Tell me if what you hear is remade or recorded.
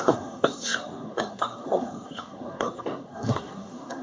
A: remade